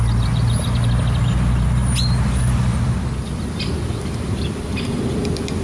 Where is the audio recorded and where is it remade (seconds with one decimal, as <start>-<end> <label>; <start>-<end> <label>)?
0.0-5.6 recorded